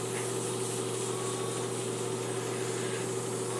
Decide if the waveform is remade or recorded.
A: recorded